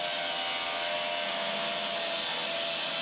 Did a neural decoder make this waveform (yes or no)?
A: no